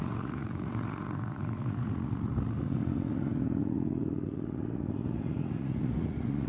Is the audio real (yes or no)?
no